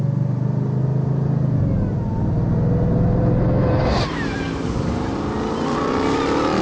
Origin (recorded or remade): recorded